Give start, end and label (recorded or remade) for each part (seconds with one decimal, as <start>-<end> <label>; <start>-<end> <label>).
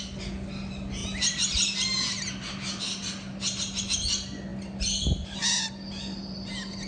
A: 0.0-6.9 recorded